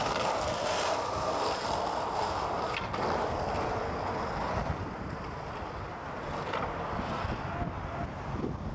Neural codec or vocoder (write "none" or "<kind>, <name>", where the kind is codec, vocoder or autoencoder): none